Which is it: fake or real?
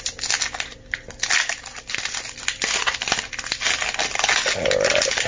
real